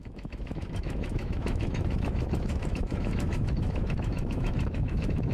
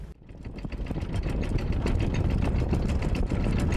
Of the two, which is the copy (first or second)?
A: first